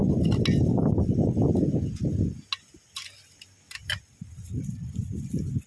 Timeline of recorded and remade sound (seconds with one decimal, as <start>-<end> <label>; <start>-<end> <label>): 0.0-5.7 recorded